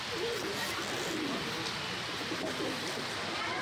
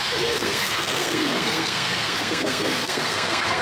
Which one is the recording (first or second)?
first